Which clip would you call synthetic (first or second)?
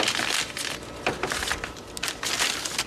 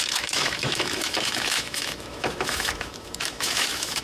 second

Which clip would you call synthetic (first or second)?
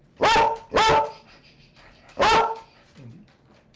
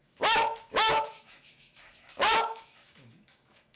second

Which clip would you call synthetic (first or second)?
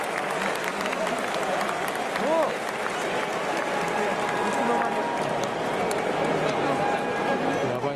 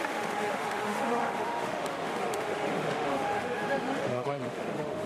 second